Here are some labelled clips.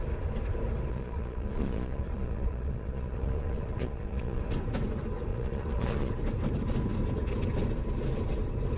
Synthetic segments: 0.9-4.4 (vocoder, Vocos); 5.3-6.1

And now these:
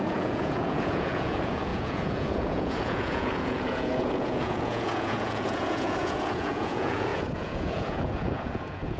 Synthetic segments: 0.0-9.0 (vocoder, Vocos)

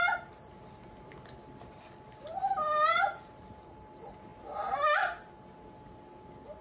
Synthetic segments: none

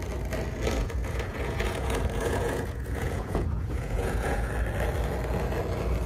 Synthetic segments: 0.8-4.5 (vocoder, Vocos)

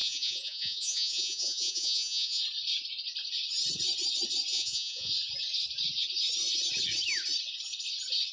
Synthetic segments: 0.0-2.4 (vocoder, Vocos); 4.5-5.1

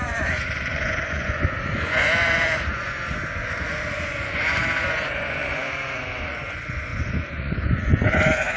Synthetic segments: 0.0-8.6 (vocoder, Vocos)

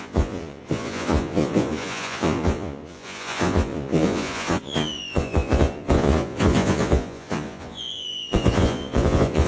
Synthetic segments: 0.0-9.5 (vocoder, Vocos)

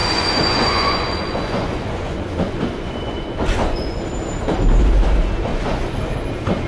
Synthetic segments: 0.0-4.0 (vocoder, Vocos); 5.5-6.1